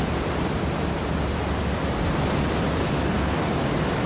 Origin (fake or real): real